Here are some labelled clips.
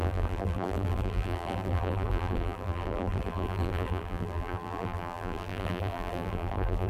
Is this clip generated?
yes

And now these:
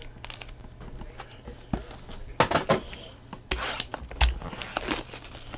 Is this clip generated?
no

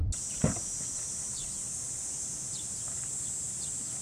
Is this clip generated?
no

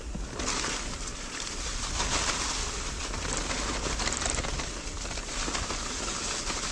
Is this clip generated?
no